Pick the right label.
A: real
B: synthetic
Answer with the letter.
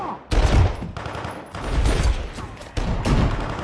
A